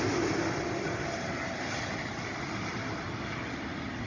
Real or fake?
real